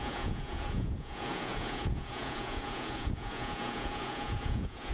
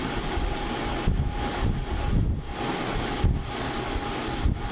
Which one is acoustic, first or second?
second